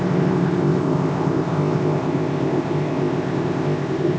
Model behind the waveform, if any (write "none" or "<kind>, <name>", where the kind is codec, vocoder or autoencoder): codec, ZipCodec